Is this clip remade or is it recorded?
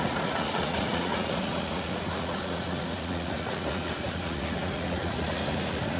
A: remade